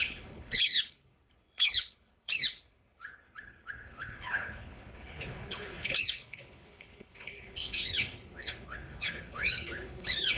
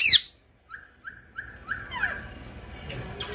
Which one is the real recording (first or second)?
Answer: second